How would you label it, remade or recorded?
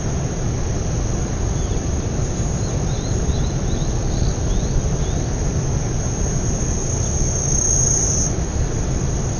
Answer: recorded